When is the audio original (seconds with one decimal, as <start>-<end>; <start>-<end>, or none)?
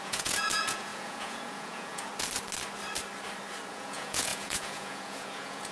2.1-3.7